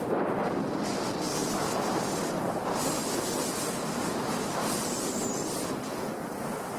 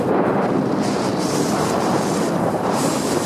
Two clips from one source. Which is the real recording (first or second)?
first